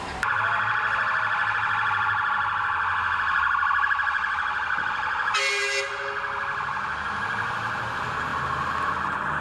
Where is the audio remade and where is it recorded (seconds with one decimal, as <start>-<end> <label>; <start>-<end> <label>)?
0.0-9.4 recorded